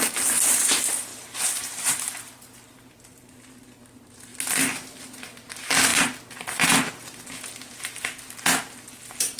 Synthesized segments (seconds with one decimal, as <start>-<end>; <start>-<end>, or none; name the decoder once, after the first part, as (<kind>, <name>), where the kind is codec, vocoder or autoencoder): 1.1-3.2 (vocoder, BigVGAN v2); 4.3-5.0